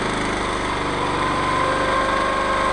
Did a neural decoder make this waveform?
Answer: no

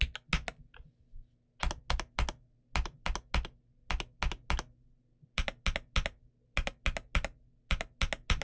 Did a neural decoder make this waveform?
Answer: no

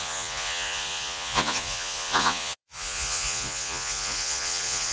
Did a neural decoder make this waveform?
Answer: yes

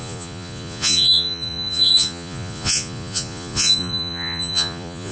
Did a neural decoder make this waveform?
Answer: yes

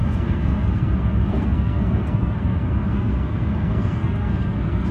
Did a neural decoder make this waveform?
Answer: yes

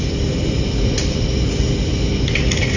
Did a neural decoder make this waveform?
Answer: no